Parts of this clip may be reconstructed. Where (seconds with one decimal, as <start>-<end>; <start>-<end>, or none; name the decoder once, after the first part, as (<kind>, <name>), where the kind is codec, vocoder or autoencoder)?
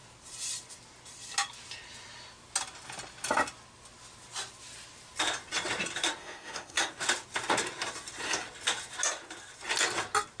6.2-6.9 (codec, SNAC)